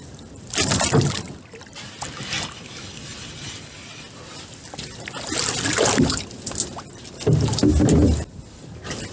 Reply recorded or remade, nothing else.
recorded